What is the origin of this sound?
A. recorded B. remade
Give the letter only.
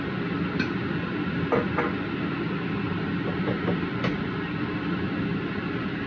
A